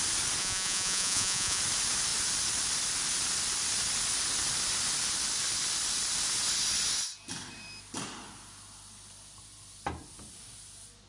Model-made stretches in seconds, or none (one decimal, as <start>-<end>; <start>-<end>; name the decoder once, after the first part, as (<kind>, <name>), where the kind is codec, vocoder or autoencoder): 0.4-1.6 (vocoder, Vocos)